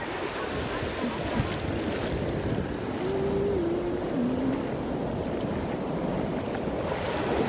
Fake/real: real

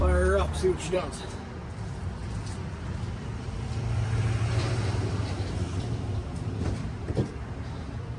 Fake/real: fake